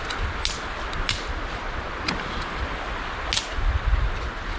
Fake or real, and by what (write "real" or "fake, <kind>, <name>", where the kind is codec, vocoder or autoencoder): real